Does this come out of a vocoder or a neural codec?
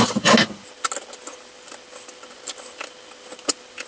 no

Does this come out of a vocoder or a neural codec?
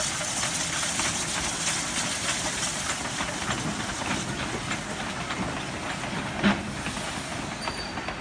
no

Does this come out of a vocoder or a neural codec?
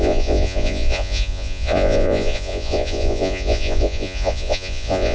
yes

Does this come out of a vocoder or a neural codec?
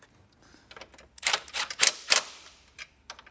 no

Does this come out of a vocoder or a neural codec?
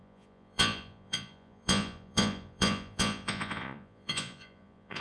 yes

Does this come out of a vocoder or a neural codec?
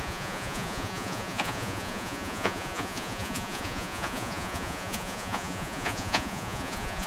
yes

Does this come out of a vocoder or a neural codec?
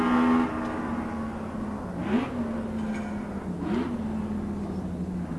no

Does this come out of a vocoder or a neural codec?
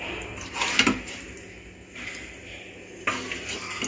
no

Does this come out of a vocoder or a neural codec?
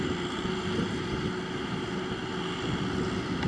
no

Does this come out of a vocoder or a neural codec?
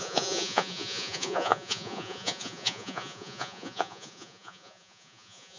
yes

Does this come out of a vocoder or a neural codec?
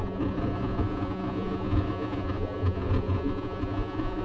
yes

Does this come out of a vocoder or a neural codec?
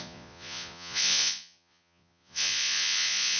yes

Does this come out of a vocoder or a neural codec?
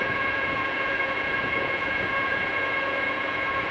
yes